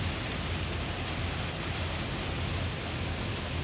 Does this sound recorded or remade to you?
recorded